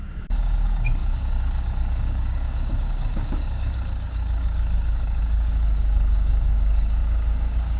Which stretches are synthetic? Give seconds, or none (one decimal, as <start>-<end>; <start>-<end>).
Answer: 0.0-7.8